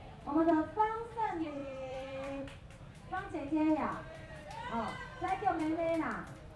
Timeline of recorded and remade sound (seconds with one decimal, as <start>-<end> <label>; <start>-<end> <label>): 0.0-6.6 remade